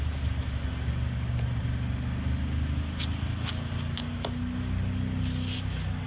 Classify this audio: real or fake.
real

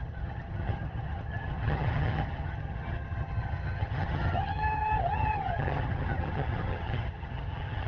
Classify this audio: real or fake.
fake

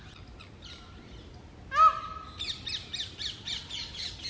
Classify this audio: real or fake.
real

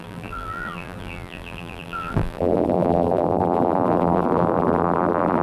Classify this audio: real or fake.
fake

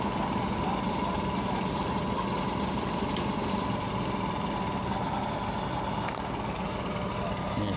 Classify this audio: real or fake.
real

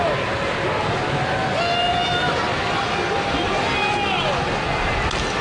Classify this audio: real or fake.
real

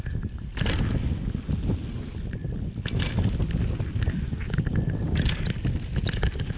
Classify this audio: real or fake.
real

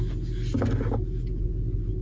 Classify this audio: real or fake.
real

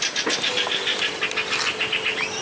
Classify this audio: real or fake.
real